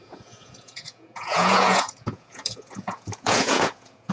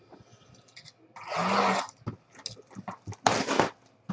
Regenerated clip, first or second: first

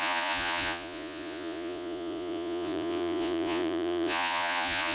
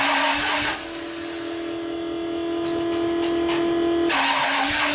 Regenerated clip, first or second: first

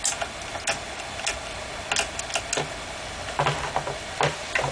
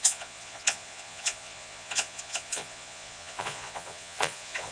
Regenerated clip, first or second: second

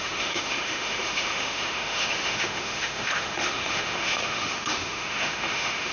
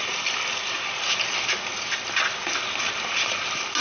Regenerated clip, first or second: first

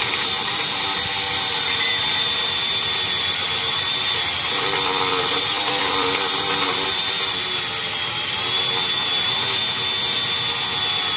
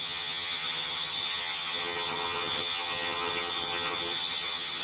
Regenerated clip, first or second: second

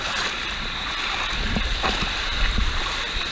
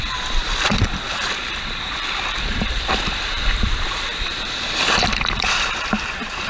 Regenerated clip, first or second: second